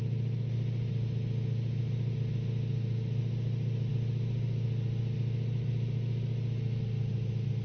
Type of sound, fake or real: real